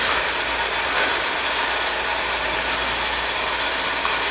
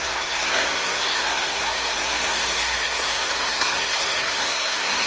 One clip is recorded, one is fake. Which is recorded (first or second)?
first